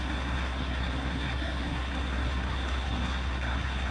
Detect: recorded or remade remade